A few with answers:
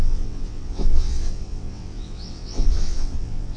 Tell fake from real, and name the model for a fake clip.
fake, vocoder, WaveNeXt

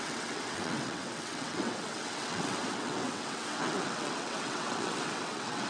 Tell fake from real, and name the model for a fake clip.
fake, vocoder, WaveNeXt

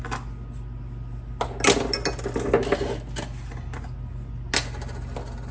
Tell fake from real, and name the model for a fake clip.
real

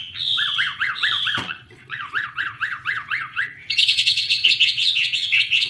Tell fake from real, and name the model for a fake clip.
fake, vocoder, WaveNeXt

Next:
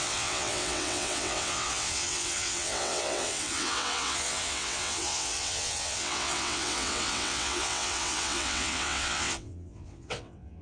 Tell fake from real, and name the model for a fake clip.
fake, vocoder, WaveNeXt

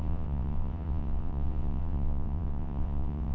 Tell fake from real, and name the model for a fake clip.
fake, vocoder, WaveNeXt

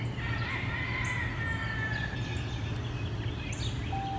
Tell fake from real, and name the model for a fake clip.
real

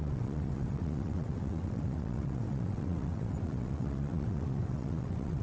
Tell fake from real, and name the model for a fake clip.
fake, vocoder, WaveNeXt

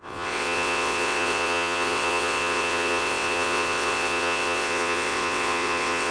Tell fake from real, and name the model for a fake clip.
fake, vocoder, WaveNeXt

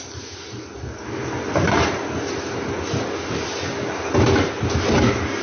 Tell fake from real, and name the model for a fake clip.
real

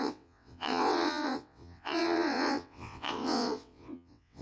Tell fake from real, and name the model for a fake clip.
fake, vocoder, WaveNeXt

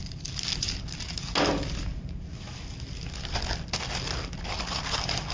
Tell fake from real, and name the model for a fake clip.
real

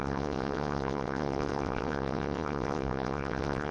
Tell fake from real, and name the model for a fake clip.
fake, vocoder, WaveNeXt